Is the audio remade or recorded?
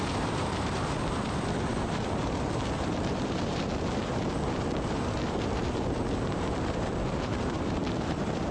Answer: remade